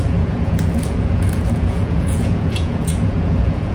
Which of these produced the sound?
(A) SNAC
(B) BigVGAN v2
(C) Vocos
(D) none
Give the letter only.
C